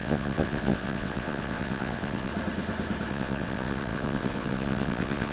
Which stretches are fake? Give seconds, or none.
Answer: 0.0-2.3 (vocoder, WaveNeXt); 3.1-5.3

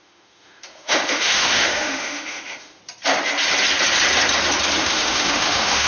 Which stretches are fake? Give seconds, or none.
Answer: 0.0-2.8 (autoencoder, DAC-VAE); 4.8-5.9